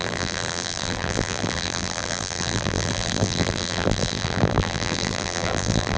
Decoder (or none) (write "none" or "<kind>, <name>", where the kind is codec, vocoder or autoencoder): vocoder, BigVGAN v2